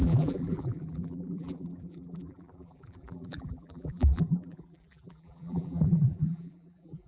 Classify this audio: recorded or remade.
remade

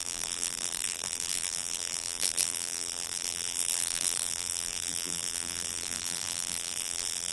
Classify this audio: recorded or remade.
remade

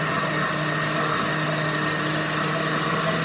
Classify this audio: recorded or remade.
recorded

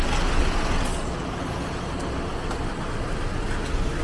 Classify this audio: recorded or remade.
recorded